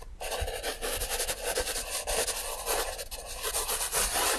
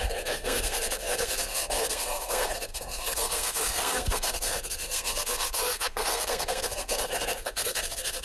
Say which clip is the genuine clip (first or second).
first